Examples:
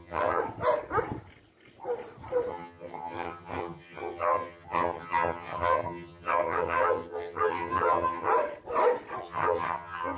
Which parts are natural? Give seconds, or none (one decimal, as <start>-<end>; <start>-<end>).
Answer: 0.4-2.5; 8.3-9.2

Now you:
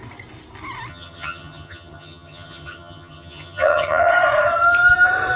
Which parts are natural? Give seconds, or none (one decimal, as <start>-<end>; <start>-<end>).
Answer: 0.0-0.9; 4.1-5.4

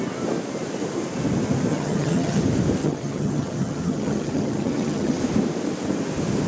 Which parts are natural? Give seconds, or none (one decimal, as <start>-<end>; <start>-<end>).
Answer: 0.0-1.7; 2.4-2.8; 5.2-6.5